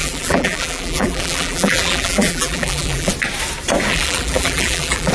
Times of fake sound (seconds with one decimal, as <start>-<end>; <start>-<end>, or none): 0.0-3.1; 3.9-5.1